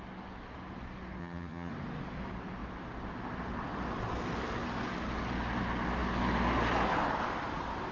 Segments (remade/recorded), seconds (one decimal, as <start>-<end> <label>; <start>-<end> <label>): 0.0-1.2 recorded; 1.2-1.7 remade; 1.7-7.9 recorded